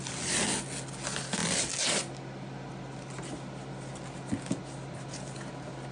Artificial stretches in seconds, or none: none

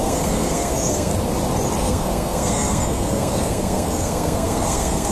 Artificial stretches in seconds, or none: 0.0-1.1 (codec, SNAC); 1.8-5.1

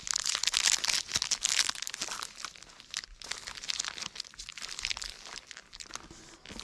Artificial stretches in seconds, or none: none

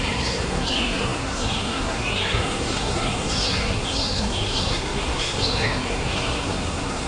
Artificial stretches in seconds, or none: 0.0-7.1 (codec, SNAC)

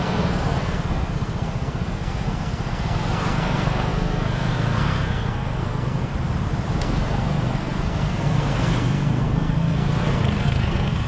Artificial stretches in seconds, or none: 0.0-6.1 (codec, SNAC); 6.8-11.1